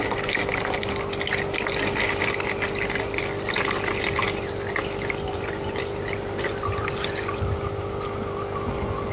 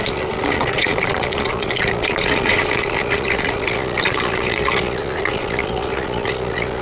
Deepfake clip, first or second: second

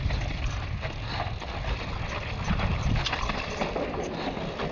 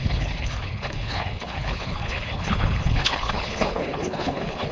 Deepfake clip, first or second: second